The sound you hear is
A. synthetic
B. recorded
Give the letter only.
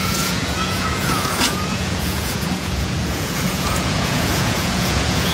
A